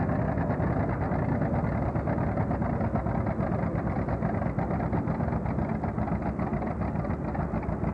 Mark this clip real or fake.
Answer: real